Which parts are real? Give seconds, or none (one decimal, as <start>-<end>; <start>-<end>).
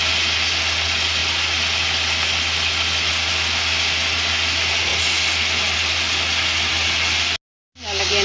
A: 0.0-8.2